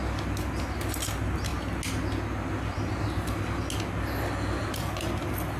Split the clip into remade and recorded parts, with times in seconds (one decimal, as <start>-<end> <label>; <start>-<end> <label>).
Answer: 0.0-5.6 recorded